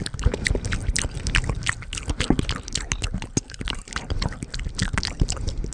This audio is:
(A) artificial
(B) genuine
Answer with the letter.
B